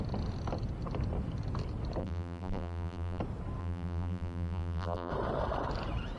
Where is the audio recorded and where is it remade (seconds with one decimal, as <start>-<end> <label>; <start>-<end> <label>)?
0.0-2.0 recorded; 2.0-3.2 remade; 3.2-3.6 recorded; 3.6-5.1 remade; 5.1-6.2 recorded